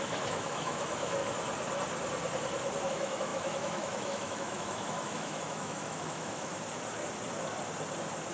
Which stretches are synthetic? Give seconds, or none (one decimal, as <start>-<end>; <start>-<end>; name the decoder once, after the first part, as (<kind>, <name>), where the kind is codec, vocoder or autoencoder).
0.0-1.2 (autoencoder, DAC-VAE); 2.9-6.5